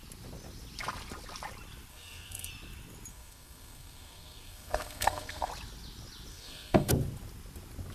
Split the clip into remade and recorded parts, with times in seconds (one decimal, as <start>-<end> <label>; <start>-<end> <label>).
0.0-1.9 recorded; 1.9-2.5 remade; 2.5-3.1 recorded; 3.1-5.5 remade; 5.5-6.3 recorded; 6.3-6.9 remade; 6.9-7.9 recorded